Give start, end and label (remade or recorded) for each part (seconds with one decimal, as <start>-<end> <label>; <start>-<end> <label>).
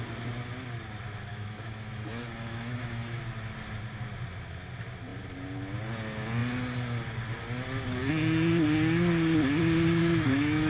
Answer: 0.0-1.3 recorded; 1.3-3.2 remade; 3.2-10.0 recorded; 10.0-10.7 remade